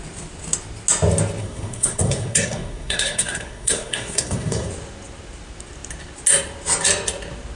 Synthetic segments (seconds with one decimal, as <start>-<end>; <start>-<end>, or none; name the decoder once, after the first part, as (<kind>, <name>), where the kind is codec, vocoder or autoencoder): 1.4-4.7 (codec, SNAC)